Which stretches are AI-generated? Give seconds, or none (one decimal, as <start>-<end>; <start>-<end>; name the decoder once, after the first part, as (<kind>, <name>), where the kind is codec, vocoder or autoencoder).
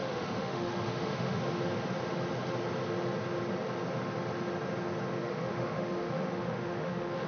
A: 0.0-1.4 (autoencoder, DAC-VAE); 5.2-7.3